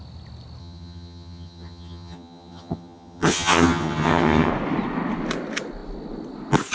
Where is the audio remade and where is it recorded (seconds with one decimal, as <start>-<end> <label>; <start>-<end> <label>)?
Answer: 0.0-0.6 recorded; 0.6-4.5 remade; 4.5-6.7 recorded